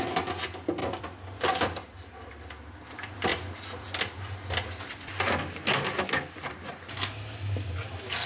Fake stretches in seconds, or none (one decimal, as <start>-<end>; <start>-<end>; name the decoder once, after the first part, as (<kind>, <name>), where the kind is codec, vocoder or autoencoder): 0.8-2.3 (vocoder, BigVGAN v2)